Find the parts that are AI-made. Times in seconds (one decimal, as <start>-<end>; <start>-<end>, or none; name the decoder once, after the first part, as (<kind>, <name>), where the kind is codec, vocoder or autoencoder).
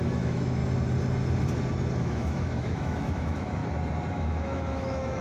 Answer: 0.0-0.6 (autoencoder, DAC-VAE); 2.0-3.6; 4.1-5.2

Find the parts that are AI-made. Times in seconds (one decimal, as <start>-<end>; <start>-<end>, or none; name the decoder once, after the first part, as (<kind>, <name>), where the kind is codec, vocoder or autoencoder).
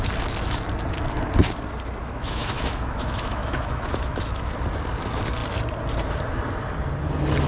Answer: 2.0-4.5 (autoencoder, DAC-VAE)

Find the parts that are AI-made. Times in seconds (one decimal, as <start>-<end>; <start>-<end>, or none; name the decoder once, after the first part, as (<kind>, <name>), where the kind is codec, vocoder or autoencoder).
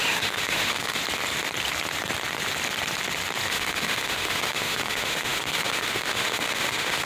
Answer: 0.0-1.0 (autoencoder, DAC-VAE); 3.5-7.1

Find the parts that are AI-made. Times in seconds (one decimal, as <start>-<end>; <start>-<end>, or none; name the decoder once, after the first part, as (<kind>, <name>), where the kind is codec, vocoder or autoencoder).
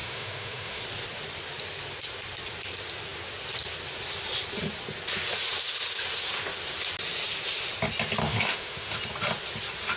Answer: 0.0-0.8 (autoencoder, DAC-VAE); 8.2-9.0